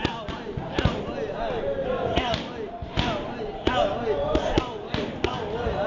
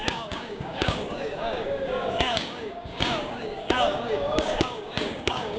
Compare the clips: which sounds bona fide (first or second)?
first